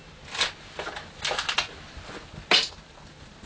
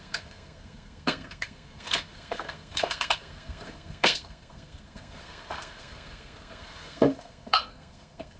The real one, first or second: first